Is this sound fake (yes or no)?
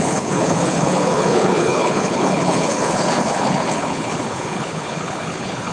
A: yes